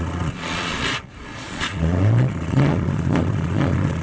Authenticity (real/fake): fake